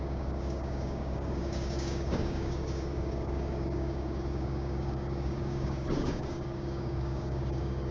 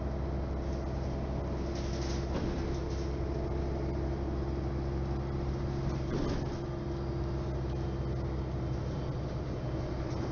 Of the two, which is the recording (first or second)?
second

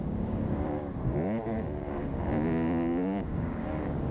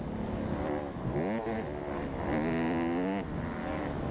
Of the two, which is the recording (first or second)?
second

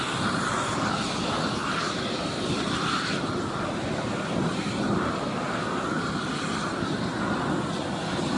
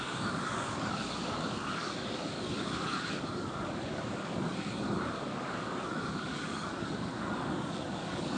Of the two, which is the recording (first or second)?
first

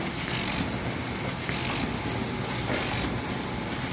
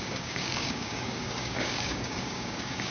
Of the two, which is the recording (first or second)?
first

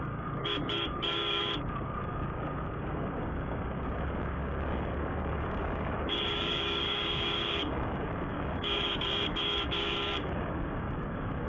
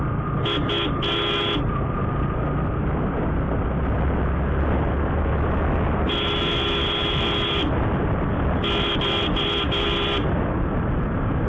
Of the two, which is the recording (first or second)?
second